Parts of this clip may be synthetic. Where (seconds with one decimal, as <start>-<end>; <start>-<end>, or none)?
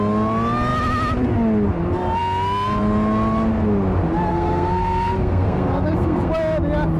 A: 4.3-6.3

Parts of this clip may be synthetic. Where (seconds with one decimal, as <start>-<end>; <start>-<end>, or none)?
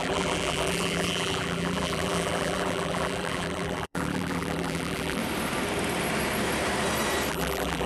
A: 0.0-5.2; 7.3-7.9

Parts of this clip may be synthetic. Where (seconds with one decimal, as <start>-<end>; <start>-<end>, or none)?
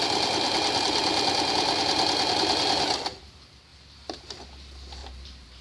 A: 3.7-4.2; 5.0-5.6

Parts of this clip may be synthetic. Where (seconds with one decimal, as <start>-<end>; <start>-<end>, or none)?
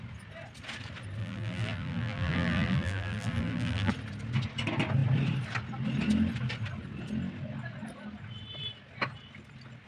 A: 1.2-3.9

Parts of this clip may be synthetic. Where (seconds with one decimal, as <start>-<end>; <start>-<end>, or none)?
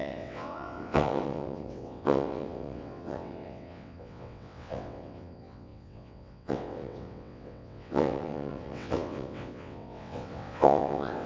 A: 0.0-11.3